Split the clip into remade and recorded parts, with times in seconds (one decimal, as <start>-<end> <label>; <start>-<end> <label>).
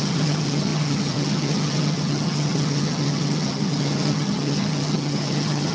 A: 0.0-5.7 remade